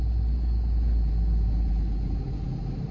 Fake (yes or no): no